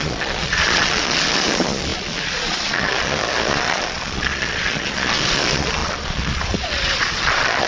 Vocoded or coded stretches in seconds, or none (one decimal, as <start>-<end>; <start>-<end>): 0.0-7.7

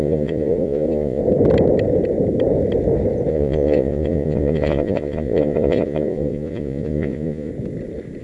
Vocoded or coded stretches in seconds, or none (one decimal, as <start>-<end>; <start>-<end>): 0.0-1.2; 3.3-7.5

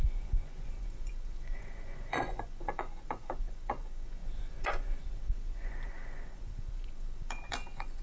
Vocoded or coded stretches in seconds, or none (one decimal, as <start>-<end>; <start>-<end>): 0.0-8.0

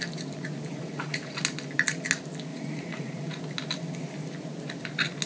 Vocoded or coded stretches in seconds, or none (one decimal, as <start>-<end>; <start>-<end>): 0.7-1.4; 2.5-3.4

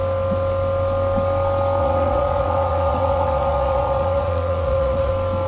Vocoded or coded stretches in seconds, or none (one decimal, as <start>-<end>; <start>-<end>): 1.8-5.1

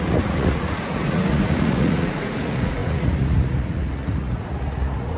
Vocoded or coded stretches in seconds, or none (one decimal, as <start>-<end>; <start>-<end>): 0.0-5.2

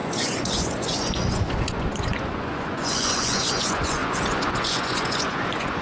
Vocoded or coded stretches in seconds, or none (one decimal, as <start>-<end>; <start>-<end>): 0.0-5.8

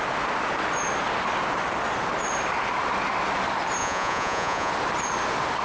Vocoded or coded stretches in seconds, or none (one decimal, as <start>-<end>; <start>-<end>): 3.8-4.7